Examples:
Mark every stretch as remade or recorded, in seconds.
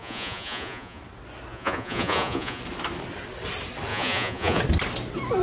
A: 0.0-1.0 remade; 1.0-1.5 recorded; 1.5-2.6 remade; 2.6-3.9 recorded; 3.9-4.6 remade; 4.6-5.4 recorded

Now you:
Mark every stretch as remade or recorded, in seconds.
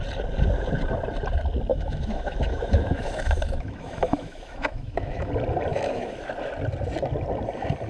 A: 0.0-1.7 recorded; 1.7-5.3 remade; 5.3-5.7 recorded; 5.7-6.3 remade; 6.3-7.9 recorded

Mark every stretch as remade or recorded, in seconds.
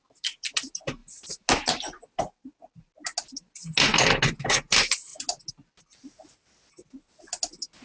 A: 0.0-7.8 recorded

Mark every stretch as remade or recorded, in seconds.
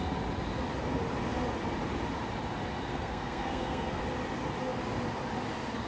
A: 0.0-2.9 recorded; 2.9-4.0 remade; 4.0-5.9 recorded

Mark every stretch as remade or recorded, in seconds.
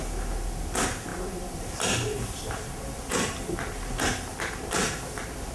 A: 0.0-1.1 recorded; 1.1-2.8 remade; 2.8-5.5 recorded